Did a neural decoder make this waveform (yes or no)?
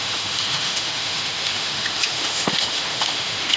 yes